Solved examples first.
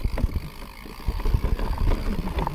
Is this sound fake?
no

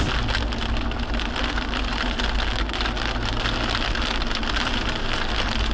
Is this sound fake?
no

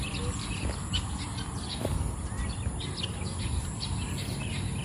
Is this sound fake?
no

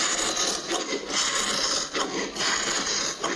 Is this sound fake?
no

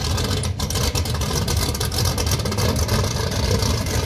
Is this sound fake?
yes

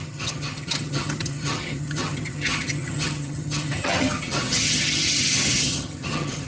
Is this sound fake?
yes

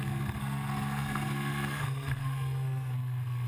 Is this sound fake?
yes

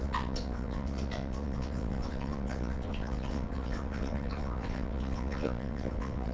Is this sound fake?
yes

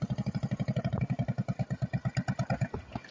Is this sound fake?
no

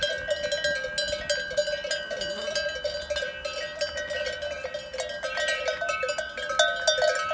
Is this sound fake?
no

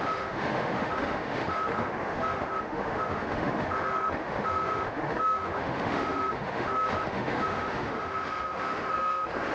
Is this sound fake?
yes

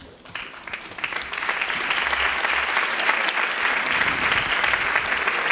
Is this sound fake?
no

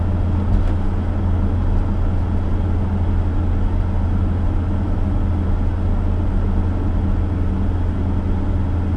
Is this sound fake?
no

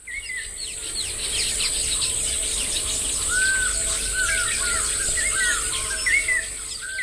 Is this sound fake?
no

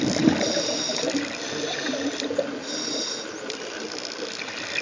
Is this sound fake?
no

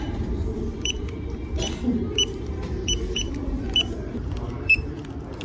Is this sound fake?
yes